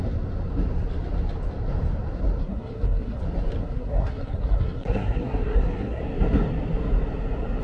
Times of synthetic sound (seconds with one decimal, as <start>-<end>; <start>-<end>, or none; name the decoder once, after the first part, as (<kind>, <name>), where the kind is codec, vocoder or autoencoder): 2.4-3.2 (codec, SNAC); 3.6-6.0

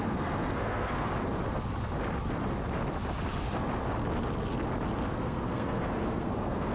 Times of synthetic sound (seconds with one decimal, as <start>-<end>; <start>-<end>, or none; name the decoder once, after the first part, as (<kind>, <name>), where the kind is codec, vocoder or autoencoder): 0.0-1.1 (codec, SNAC); 5.1-6.7

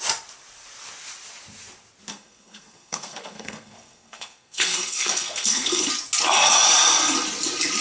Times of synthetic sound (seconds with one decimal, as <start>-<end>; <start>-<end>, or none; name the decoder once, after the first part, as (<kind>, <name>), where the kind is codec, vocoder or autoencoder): 2.1-5.9 (codec, SNAC)

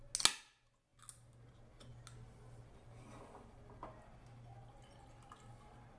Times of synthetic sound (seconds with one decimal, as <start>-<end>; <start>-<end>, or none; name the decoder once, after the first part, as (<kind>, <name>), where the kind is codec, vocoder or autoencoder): none

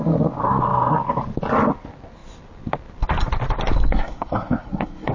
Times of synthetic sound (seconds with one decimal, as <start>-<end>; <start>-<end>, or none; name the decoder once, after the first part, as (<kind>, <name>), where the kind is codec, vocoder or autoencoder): 3.9-5.1 (codec, SNAC)

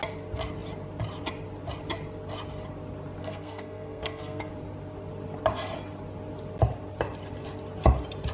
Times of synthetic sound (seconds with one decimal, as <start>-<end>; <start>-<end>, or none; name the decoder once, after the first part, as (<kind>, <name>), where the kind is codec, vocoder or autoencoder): 3.2-4.5 (codec, SNAC)